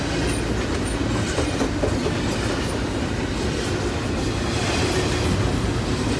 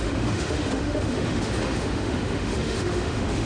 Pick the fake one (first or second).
second